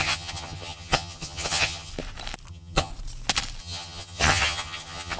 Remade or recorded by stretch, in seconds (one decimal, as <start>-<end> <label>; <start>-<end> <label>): 0.0-1.9 remade; 1.9-2.5 recorded; 2.5-2.9 remade; 2.9-3.6 recorded; 3.6-5.2 remade